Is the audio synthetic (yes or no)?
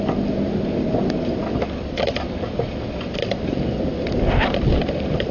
no